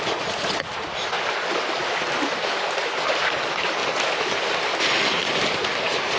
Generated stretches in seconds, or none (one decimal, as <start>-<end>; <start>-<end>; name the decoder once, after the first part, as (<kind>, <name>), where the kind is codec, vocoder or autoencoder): none